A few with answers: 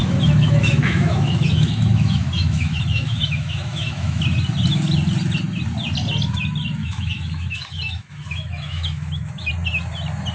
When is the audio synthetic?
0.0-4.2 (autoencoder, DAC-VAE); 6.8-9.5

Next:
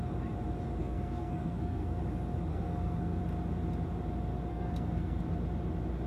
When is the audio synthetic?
0.8-2.0 (codec, SNAC); 2.5-3.2; 4.5-5.2